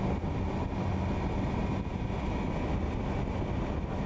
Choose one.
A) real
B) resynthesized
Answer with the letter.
A